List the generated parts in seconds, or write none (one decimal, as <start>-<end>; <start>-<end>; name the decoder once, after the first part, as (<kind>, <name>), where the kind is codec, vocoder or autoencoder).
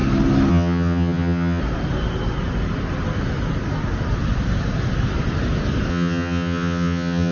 0.5-1.6 (vocoder, HiFi-GAN); 5.9-7.3